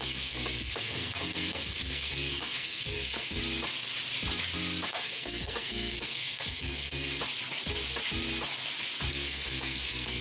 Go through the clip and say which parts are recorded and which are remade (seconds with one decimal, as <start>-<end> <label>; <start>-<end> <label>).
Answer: 0.0-3.4 remade; 3.4-4.9 recorded; 4.9-7.2 remade; 7.2-9.1 recorded; 9.1-10.2 remade